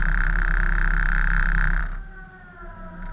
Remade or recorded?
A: remade